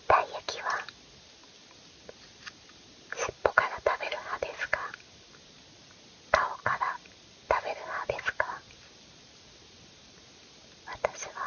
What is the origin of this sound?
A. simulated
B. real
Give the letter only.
B